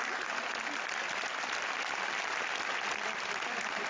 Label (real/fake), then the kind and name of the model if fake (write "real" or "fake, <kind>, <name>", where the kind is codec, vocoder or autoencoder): real